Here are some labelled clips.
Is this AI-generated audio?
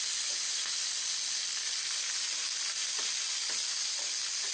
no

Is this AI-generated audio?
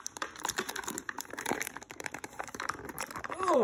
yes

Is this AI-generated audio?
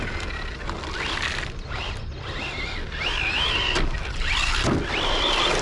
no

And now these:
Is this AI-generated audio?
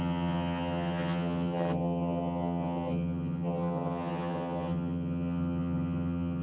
yes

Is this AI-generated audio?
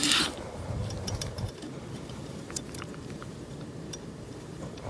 yes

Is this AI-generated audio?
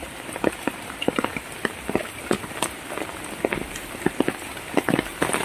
no